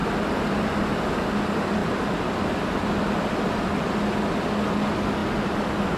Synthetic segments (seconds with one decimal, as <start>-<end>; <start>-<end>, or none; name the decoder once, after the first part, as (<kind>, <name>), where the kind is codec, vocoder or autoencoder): 0.0-0.8 (vocoder, BigVGAN v2); 1.8-2.4; 5.2-6.0